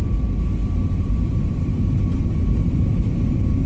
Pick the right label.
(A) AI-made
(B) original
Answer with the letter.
B